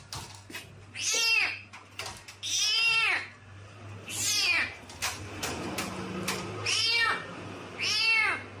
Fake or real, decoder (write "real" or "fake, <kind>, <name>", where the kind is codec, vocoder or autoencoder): real